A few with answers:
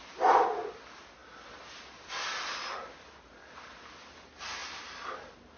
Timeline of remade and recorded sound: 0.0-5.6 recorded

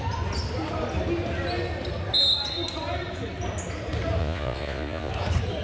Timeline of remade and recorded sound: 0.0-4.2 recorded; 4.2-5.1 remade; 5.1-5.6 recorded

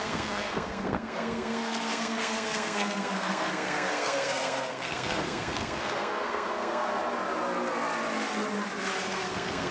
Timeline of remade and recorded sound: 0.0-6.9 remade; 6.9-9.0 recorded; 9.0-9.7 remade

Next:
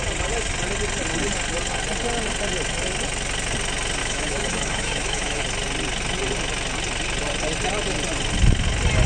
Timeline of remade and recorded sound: 0.0-4.0 recorded; 4.0-5.4 remade; 5.4-9.1 recorded

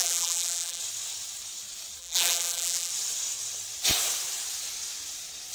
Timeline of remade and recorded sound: 0.0-0.8 remade; 0.8-2.0 recorded; 2.0-2.9 remade; 2.9-5.5 recorded

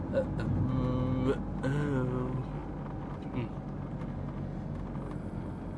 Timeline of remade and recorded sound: 0.0-5.8 recorded